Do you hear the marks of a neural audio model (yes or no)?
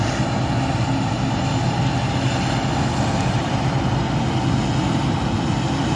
no